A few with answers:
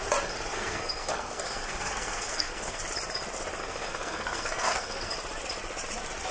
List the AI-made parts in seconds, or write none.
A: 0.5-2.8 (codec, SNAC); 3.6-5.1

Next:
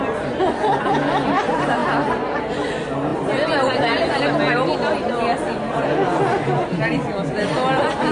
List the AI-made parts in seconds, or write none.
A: none

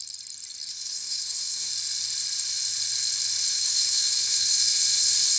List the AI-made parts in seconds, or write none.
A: 0.7-1.7 (codec, SNAC); 3.5-5.4

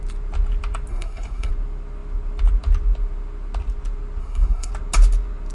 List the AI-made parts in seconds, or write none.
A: 0.9-1.5 (codec, SNAC); 4.2-4.7

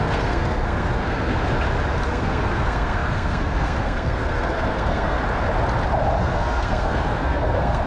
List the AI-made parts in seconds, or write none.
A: 0.0-1.5 (codec, SNAC); 2.1-5.2; 6.2-7.9